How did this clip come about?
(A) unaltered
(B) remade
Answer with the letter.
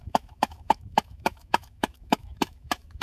B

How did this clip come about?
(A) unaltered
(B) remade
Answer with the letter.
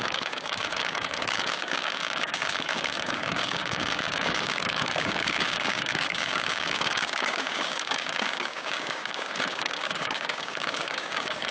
B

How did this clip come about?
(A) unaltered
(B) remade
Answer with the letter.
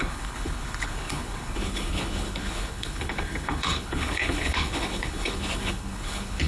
B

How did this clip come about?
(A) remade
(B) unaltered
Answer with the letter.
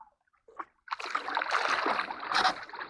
B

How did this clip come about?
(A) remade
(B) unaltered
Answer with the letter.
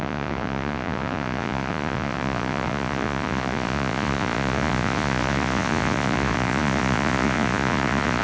A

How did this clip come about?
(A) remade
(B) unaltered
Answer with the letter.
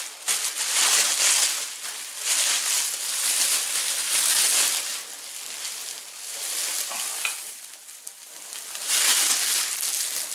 B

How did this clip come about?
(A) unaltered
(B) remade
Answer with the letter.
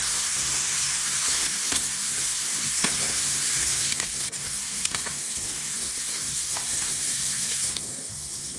B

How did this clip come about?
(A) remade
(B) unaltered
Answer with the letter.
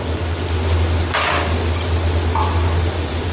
B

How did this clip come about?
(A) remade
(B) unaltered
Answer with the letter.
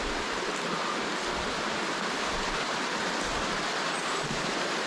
B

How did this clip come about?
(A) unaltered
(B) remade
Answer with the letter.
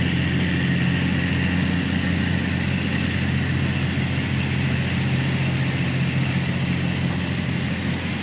A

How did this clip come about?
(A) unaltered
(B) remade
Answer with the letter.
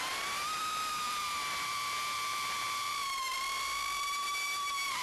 B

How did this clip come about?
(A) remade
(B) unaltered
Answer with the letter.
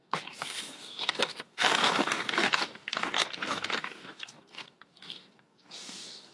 A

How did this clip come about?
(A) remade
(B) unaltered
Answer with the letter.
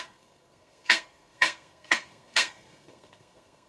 A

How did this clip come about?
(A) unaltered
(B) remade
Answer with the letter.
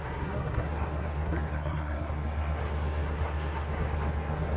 B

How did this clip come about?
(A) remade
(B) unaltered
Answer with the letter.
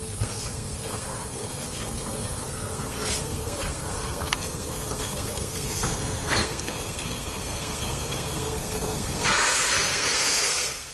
A